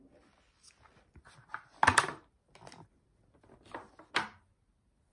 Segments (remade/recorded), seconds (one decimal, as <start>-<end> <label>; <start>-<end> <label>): 0.0-5.1 recorded